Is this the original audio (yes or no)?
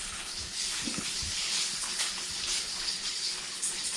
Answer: no